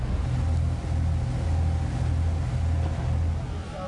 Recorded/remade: recorded